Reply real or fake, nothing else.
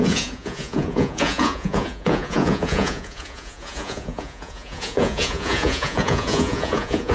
fake